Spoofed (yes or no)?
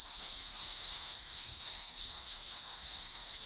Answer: yes